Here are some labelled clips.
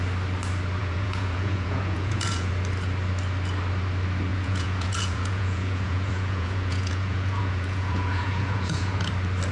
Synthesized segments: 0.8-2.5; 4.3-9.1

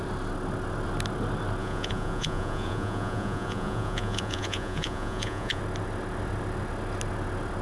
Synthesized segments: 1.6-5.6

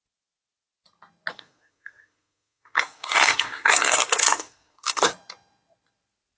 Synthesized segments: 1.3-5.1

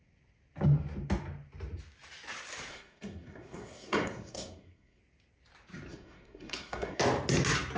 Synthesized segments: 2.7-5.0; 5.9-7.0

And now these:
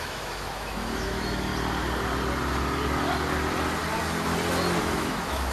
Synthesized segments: 0.0-1.5; 4.8-5.5

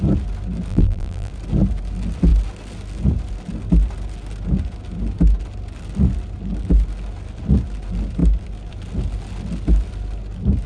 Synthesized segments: 0.7-1.3

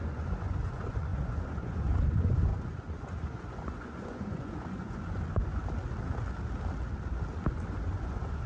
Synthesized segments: 0.0-5.6; 7.5-8.5

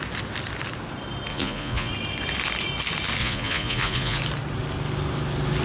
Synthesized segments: 1.3-1.9; 3.2-4.2